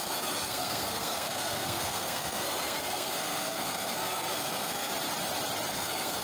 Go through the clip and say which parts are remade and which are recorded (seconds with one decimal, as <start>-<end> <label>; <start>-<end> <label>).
0.0-4.9 remade; 4.9-5.7 recorded; 5.7-6.2 remade